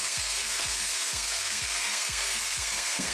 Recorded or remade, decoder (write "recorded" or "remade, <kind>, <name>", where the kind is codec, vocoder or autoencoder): remade, codec, SNAC